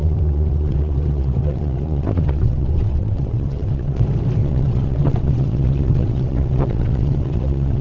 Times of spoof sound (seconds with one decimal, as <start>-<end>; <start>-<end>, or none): 0.0-4.0; 4.4-7.8